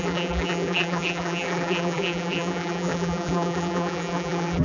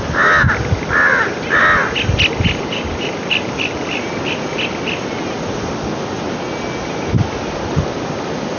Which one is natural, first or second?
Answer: second